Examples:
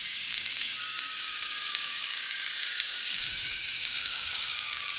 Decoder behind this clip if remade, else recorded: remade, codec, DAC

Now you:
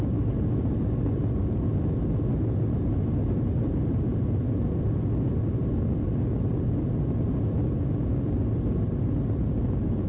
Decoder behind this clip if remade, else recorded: recorded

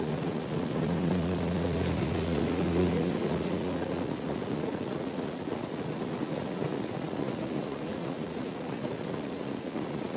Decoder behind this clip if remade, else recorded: remade, vocoder, Vocos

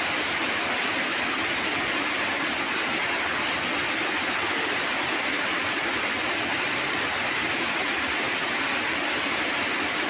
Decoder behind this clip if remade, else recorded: recorded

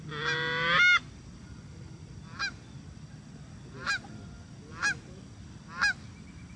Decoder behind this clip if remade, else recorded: recorded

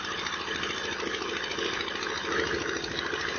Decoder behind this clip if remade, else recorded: recorded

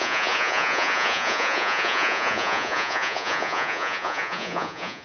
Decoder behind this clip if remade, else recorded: remade, vocoder, Vocos